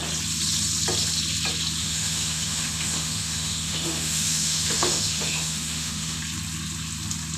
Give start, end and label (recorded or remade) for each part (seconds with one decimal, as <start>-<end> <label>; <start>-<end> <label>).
0.0-1.8 recorded; 1.8-6.2 remade; 6.2-7.4 recorded